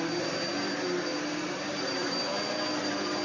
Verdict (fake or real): real